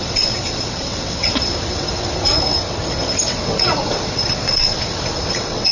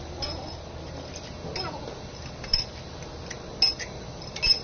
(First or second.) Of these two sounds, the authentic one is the second